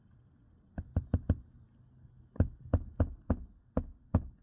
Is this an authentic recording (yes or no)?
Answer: yes